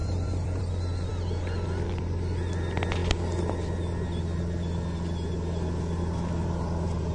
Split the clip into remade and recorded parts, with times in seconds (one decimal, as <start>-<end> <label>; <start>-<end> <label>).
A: 0.0-0.6 remade; 0.6-7.1 recorded